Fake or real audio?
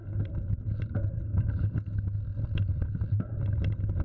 real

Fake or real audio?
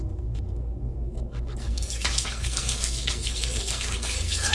fake